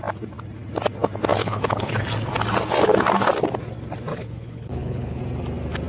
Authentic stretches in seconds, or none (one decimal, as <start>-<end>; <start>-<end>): 0.0-1.4; 2.0-4.1; 5.2-5.9